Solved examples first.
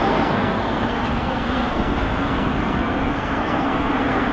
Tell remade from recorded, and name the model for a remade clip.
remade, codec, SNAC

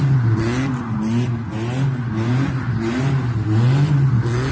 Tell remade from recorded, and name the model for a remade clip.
recorded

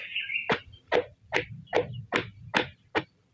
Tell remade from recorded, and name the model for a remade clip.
recorded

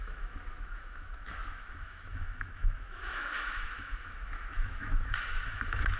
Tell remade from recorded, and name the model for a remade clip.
remade, autoencoder, DAC-VAE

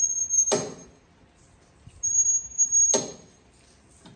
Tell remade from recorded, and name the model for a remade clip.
recorded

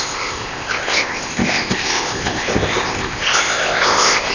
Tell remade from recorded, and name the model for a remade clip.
remade, codec, ZipCodec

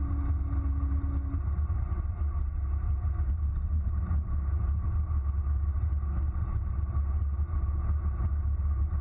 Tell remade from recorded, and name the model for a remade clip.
recorded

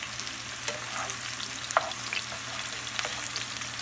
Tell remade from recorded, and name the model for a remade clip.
recorded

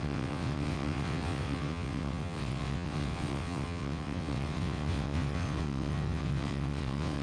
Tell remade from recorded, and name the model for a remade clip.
remade, vocoder, WaveNeXt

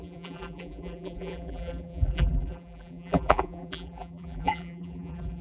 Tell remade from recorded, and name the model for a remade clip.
remade, vocoder, BigVGAN v2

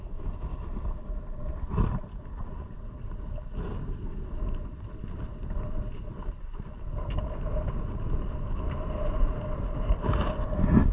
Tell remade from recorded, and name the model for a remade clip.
recorded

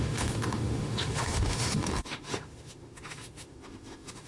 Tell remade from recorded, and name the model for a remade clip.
remade, autoencoder, DAC-VAE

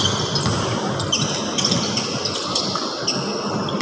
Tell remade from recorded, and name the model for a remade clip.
recorded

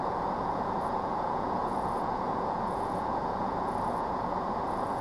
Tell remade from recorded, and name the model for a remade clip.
remade, vocoder, Vocos